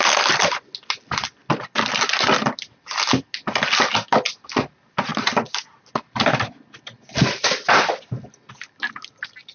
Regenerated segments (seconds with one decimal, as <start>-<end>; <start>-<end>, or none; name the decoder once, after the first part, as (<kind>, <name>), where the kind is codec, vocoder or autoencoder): 5.1-5.7 (vocoder, BigVGAN v2)